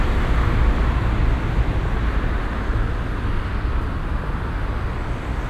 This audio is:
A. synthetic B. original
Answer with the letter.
B